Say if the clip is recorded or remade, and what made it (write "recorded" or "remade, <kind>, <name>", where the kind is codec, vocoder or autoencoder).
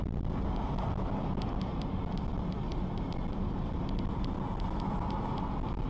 recorded